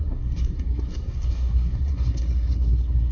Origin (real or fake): fake